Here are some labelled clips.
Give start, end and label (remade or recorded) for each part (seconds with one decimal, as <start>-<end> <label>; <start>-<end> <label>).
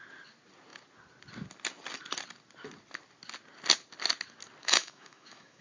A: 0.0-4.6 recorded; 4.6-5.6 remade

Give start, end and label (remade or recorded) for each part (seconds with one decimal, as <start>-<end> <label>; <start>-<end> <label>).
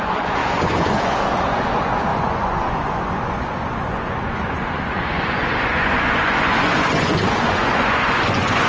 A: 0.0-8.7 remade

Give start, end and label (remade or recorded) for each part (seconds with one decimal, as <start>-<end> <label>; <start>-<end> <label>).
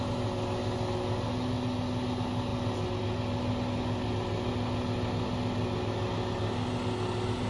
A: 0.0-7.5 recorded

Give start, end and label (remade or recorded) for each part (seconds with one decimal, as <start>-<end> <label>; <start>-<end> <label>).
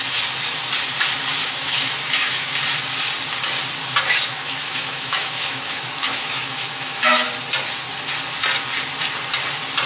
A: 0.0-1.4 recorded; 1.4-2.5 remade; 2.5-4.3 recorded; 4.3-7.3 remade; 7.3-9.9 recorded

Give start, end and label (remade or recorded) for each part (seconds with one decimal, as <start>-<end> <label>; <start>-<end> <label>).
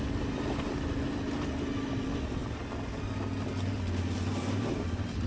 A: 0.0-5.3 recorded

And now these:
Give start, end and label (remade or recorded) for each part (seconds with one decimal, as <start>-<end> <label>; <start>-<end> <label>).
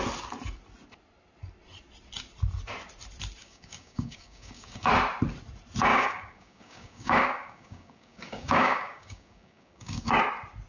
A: 0.0-3.4 recorded; 3.4-4.9 remade; 4.9-5.9 recorded; 5.9-10.2 remade; 10.2-10.7 recorded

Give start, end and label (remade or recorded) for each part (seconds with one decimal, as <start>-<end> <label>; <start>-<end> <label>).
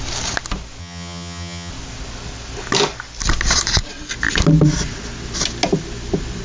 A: 0.0-0.8 recorded; 0.8-1.7 remade; 1.7-6.4 recorded